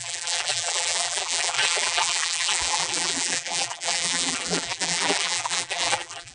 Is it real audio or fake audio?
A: fake